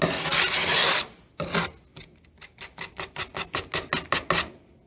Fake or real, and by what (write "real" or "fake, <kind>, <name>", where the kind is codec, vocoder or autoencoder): real